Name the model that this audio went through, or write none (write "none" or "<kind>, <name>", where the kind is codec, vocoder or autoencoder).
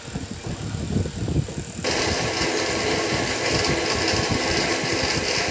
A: none